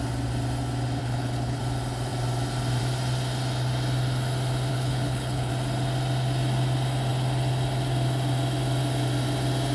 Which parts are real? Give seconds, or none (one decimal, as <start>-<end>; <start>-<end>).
0.0-1.0; 1.6-4.7; 5.5-9.7